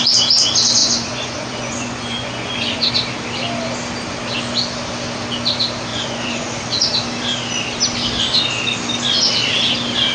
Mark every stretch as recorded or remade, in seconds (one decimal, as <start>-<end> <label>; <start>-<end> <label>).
0.0-0.8 recorded; 0.8-2.9 remade; 2.9-5.9 recorded; 5.9-6.6 remade; 6.6-10.1 recorded